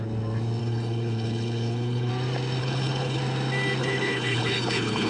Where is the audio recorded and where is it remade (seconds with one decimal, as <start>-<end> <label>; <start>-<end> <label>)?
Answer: 0.0-0.6 recorded; 0.6-2.1 remade; 2.1-2.6 recorded; 2.6-3.2 remade; 3.2-3.8 recorded; 3.8-5.1 remade